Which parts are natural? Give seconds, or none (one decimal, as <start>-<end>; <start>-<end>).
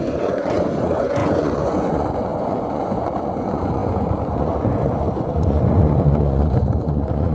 none